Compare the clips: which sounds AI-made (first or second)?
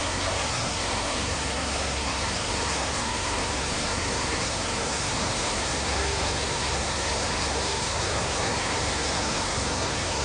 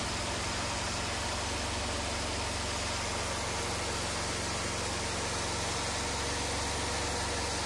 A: first